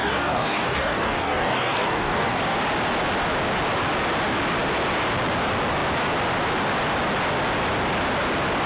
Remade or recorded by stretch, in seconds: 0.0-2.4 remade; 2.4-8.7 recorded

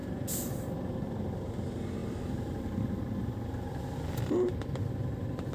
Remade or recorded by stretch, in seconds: 0.0-1.1 remade; 1.1-5.5 recorded

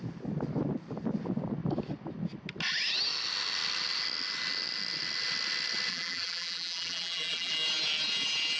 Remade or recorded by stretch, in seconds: 0.0-5.9 recorded; 5.9-7.5 remade; 7.5-8.6 recorded

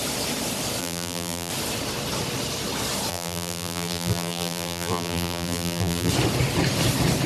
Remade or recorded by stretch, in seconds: 0.0-0.8 recorded; 0.8-1.5 remade; 1.5-3.1 recorded; 3.1-6.1 remade; 6.1-7.3 recorded

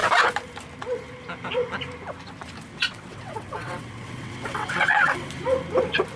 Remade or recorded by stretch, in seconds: 0.0-2.7 recorded; 2.7-5.3 remade; 5.3-6.2 recorded

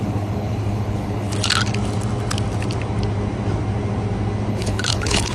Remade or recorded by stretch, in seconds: 0.0-1.3 remade; 1.3-4.5 recorded; 4.5-5.3 remade

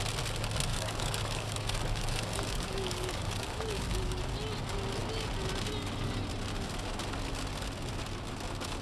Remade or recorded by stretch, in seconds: 0.0-0.7 recorded; 0.7-4.2 remade; 4.2-8.8 recorded